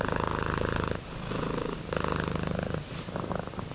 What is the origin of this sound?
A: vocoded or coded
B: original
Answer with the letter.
B